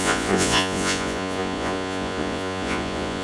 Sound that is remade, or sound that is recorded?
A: remade